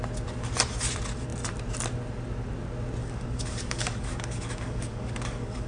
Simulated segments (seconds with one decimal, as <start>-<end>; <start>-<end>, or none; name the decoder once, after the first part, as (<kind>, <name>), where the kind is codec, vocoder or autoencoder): 3.0-5.7 (codec, DAC)